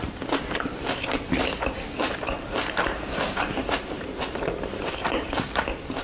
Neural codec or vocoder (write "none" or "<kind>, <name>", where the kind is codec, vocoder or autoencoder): none